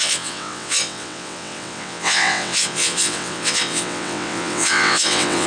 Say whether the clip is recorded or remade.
remade